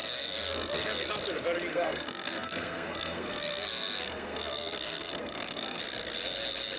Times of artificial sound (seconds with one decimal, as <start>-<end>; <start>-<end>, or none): 0.0-1.1; 1.7-5.8